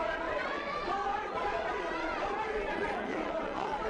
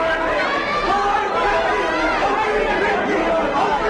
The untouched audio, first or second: second